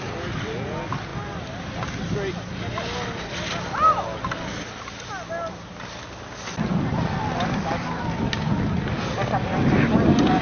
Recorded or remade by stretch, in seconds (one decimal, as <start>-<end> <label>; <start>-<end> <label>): 0.0-10.4 recorded